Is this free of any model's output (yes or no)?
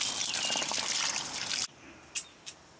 yes